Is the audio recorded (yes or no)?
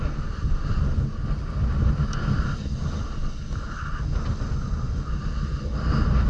yes